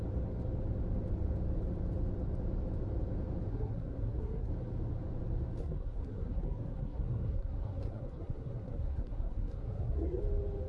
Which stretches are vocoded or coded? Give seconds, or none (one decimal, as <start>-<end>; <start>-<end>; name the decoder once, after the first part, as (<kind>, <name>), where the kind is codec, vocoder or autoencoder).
3.5-4.5 (codec, SNAC); 5.6-10.2